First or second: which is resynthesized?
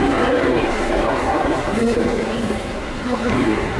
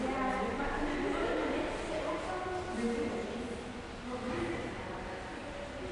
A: first